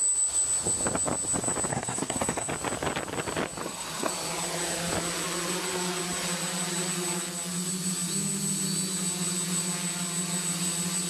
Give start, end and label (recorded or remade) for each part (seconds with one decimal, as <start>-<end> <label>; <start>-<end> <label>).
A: 0.0-1.7 recorded; 1.7-2.5 remade; 2.5-3.6 recorded; 3.6-4.1 remade; 4.1-11.1 recorded